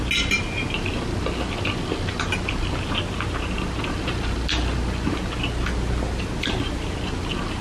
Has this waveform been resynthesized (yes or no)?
no